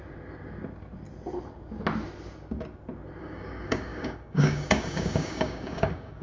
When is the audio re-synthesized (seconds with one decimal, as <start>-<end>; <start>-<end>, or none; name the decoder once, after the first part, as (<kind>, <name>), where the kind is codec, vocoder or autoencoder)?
3.2-6.2 (codec, DAC)